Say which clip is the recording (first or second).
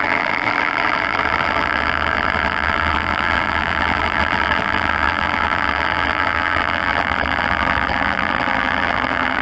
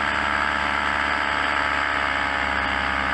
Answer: second